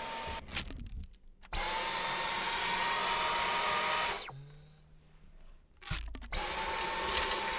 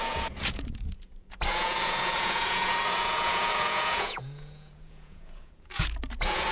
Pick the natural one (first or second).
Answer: first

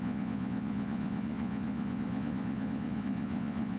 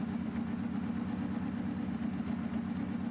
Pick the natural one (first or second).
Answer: second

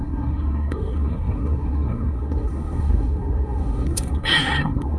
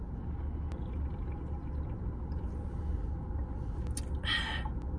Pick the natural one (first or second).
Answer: second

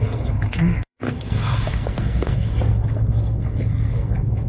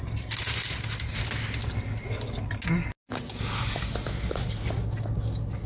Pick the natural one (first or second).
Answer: second